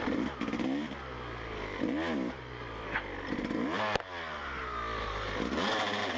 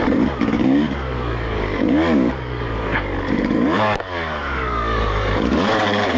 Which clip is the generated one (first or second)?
second